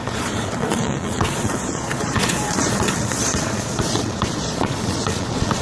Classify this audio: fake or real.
fake